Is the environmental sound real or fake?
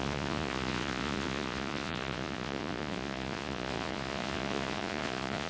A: fake